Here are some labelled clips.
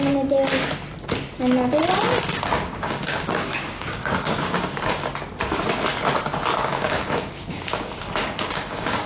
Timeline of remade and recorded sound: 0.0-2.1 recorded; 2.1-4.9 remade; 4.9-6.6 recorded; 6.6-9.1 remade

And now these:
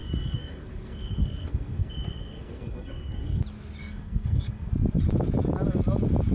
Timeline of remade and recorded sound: 0.0-3.4 remade; 3.4-3.8 recorded; 3.8-4.7 remade; 4.7-6.3 recorded

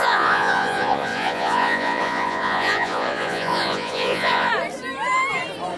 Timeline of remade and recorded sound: 0.0-4.5 remade; 4.5-5.8 recorded